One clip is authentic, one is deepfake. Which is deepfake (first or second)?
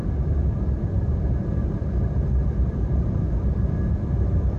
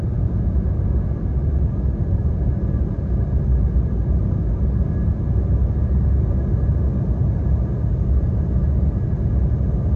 first